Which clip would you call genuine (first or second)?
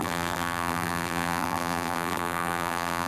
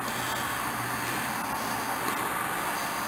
second